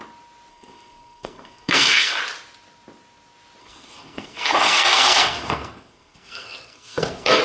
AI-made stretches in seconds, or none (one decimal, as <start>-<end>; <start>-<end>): 0.5-2.2; 3.6-7.4